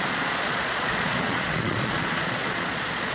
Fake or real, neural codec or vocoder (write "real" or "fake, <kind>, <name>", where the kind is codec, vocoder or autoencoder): fake, vocoder, Vocos